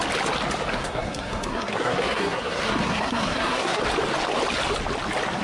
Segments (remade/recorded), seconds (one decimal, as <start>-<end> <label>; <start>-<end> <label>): 0.0-0.7 recorded; 0.7-3.8 remade; 3.8-5.4 recorded